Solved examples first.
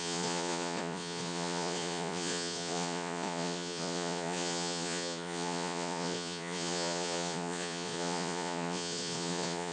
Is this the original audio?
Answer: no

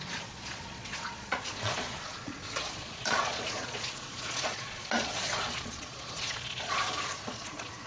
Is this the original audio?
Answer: no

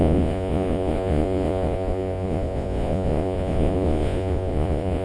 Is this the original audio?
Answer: no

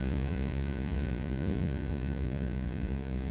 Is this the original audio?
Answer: no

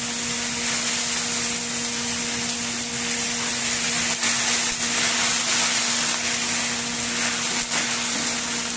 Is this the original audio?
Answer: yes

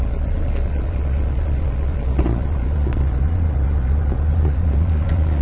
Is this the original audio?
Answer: no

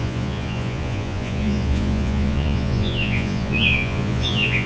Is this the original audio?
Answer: no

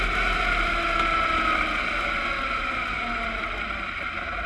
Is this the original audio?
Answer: yes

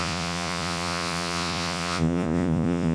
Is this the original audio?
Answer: no